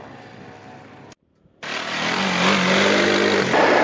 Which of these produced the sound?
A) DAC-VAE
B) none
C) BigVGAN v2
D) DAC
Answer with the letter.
B